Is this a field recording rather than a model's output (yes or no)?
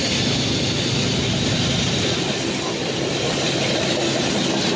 yes